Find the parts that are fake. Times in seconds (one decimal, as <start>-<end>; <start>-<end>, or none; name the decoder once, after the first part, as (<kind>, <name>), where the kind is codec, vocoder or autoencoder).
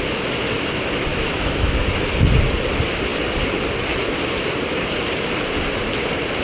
1.1-1.9 (autoencoder, DAC-VAE)